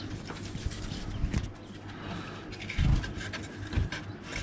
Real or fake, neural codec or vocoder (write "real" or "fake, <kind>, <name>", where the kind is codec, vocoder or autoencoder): real